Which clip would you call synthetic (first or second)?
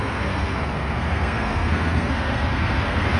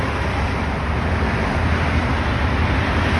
first